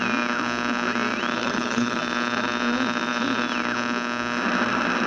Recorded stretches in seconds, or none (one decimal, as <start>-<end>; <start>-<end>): 0.0-1.4; 2.0-5.1